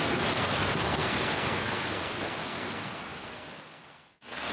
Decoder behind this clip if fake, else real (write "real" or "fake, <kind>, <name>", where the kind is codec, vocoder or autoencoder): fake, codec, SNAC